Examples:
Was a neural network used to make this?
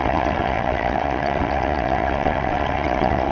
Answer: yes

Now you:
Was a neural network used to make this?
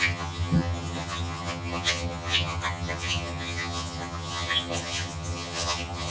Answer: yes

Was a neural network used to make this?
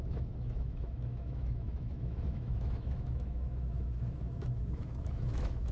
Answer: yes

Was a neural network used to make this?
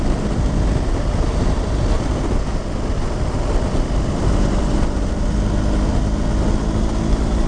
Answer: no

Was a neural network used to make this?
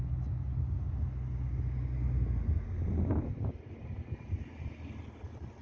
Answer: no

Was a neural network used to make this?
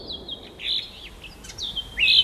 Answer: no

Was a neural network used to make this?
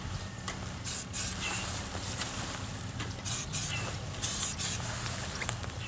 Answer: no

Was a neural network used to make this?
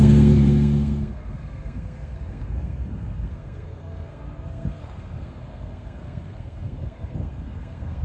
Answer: yes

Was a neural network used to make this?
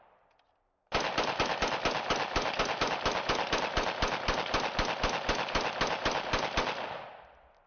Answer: no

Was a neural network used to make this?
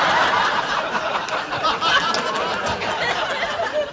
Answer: no